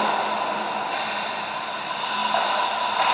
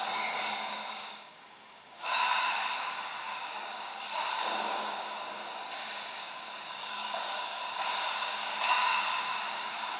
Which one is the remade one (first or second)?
second